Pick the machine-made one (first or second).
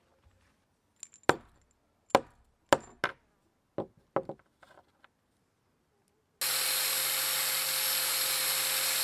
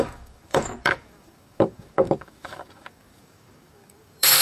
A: second